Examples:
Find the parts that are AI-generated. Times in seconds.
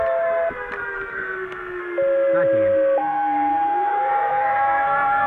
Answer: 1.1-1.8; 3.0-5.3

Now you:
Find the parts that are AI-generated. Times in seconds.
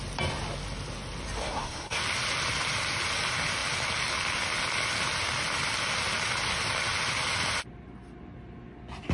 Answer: 1.4-2.0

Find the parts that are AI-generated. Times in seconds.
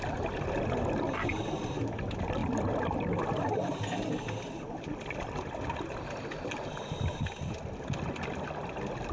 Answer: none